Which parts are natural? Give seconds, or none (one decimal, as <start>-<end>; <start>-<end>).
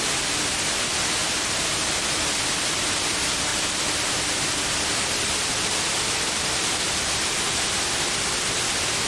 0.0-3.5; 7.3-9.1